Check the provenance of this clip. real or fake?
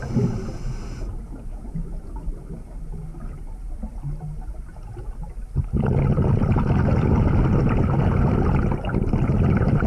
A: real